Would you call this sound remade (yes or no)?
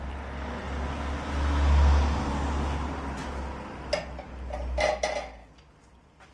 no